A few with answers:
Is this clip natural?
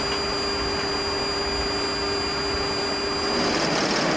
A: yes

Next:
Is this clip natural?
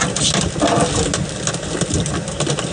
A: yes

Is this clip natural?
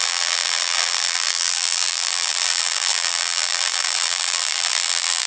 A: no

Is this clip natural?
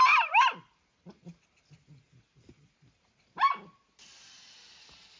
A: yes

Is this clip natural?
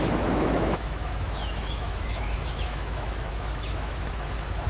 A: no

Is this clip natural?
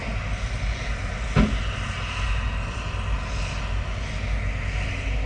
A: yes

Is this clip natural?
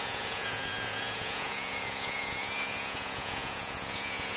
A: no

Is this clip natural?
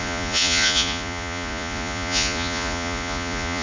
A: no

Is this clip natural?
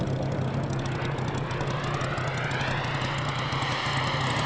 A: yes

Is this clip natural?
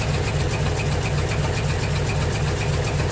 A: yes